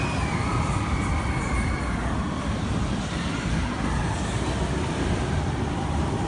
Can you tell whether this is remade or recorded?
recorded